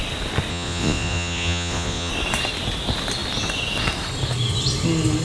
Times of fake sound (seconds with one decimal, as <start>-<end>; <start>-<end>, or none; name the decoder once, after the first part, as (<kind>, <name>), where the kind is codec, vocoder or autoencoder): 0.5-2.1 (vocoder, Vocos)